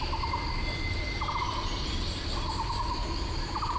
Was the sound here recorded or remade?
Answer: recorded